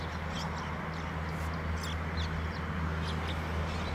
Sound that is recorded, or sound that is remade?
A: recorded